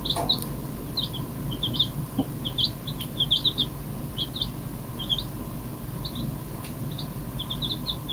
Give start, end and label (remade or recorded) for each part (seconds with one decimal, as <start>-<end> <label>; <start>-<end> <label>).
0.0-8.1 recorded